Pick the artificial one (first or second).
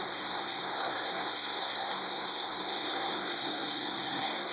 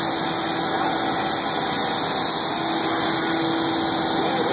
first